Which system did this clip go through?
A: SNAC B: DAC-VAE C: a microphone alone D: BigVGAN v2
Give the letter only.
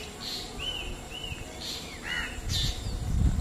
C